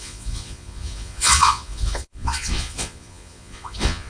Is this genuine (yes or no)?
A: no